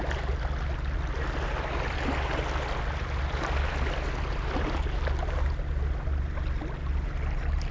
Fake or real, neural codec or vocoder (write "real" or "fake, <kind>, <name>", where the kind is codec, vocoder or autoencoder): real